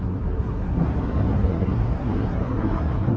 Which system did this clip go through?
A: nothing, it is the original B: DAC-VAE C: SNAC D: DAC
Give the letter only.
C